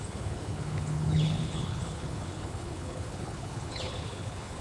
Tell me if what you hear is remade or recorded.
remade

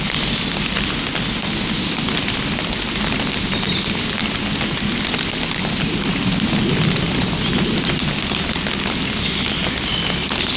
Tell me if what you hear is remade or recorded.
recorded